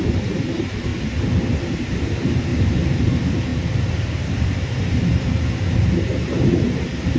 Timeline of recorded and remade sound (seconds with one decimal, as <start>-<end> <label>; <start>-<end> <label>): 0.0-0.9 remade; 0.9-1.7 recorded; 1.7-2.5 remade; 2.5-3.0 recorded; 3.0-7.2 remade